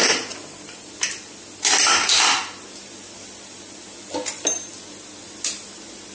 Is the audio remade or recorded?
recorded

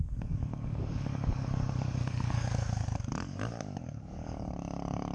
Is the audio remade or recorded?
remade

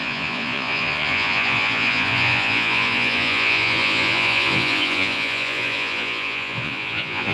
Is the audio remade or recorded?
remade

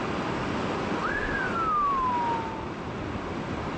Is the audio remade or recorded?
recorded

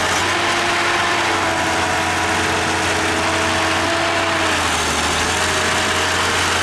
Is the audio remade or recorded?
recorded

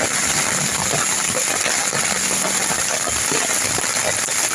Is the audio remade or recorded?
recorded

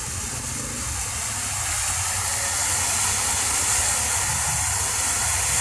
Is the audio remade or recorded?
remade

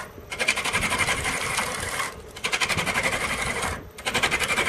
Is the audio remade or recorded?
recorded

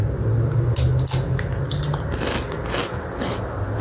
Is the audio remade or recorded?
recorded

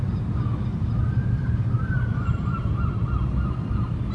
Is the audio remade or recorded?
recorded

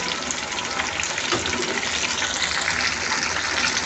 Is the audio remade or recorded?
recorded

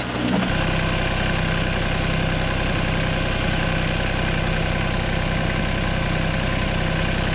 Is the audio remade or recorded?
recorded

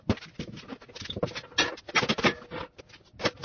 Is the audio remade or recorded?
recorded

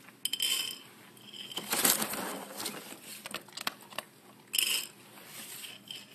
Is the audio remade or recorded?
recorded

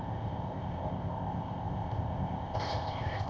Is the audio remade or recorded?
remade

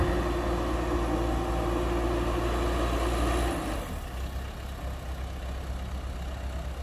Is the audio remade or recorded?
recorded